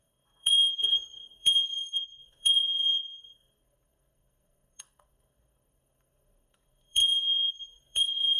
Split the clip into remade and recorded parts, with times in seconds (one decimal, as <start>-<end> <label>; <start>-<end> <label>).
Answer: 0.0-8.4 remade